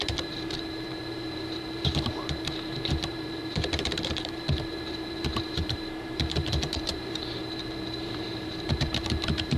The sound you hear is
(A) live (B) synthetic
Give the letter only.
B